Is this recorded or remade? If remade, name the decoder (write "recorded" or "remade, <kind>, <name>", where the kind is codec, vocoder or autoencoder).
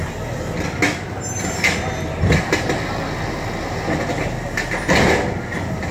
recorded